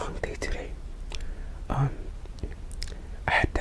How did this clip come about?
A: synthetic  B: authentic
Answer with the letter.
B